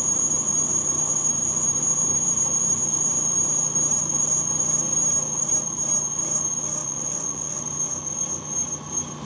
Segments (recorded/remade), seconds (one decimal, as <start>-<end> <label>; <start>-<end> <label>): 0.0-6.8 recorded; 6.8-7.6 remade; 7.6-9.3 recorded